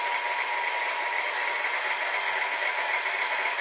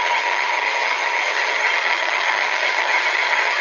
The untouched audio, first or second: first